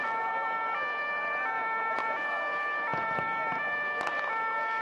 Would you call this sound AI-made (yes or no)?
no